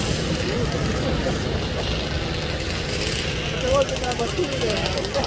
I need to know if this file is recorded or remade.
recorded